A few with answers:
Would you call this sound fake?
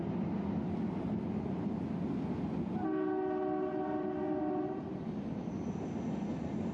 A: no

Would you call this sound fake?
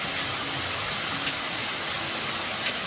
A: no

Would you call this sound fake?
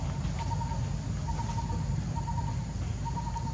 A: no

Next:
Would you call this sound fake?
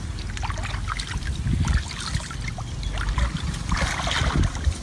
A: no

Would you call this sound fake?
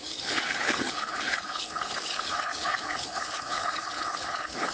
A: yes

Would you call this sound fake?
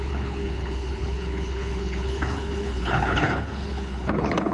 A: yes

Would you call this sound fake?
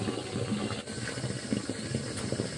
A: no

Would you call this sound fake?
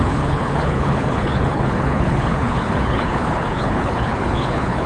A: yes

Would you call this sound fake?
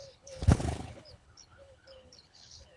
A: yes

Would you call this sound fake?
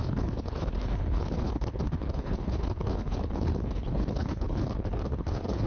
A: yes